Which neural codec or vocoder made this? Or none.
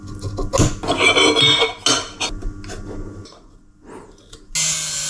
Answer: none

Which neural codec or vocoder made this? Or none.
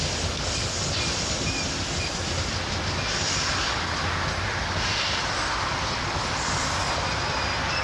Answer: none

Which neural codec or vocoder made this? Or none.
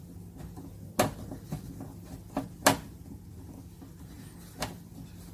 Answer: none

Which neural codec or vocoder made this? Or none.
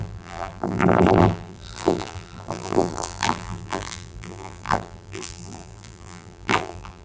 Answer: vocoder, BigVGAN v2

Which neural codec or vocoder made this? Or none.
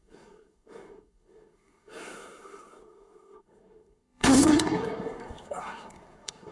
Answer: codec, SNAC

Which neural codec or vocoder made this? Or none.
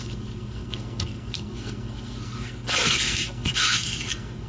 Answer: codec, SNAC